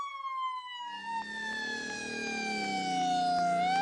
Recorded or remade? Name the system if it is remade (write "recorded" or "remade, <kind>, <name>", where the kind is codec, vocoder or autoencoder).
recorded